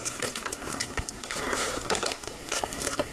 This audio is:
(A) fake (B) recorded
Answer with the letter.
A